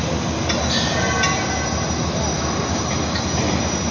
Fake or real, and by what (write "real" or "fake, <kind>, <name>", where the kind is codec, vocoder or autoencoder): real